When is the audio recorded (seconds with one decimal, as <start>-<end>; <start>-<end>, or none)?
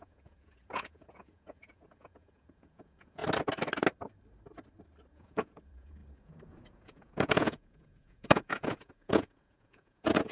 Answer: 3.2-5.1